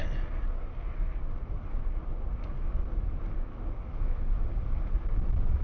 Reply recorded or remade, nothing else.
recorded